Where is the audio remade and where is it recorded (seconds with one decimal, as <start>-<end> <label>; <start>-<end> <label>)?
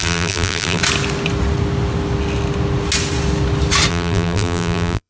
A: 0.0-0.8 remade; 0.8-3.9 recorded; 3.9-5.1 remade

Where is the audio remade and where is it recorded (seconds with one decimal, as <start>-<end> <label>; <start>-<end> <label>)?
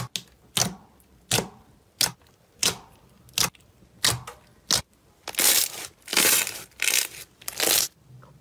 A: 0.0-6.1 recorded; 6.1-6.7 remade; 6.7-8.4 recorded